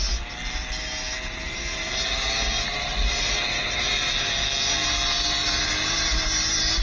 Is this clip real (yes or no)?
yes